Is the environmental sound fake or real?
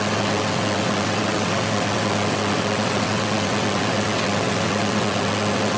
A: fake